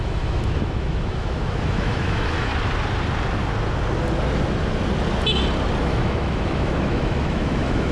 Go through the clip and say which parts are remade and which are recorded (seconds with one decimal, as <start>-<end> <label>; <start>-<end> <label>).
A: 0.0-2.5 remade; 2.5-5.8 recorded; 5.8-7.9 remade